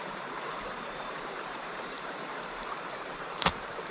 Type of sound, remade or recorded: remade